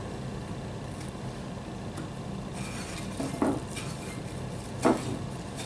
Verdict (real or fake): real